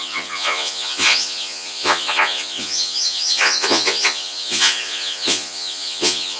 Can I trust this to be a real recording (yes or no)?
no